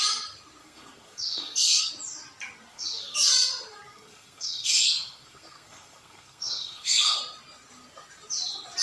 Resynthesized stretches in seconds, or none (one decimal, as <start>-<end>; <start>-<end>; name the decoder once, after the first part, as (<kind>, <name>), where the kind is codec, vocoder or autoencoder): 0.6-1.9 (codec, SNAC); 2.7-3.5; 3.9-7.2